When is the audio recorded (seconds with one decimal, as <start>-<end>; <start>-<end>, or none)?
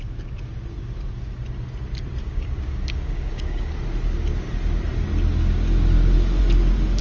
0.0-2.2; 3.7-7.0